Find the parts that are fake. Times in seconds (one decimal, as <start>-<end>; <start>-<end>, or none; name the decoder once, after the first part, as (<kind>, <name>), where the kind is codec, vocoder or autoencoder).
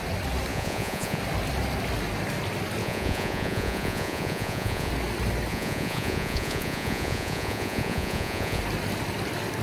0.5-1.2 (vocoder, Vocos); 2.8-4.9; 5.5-8.6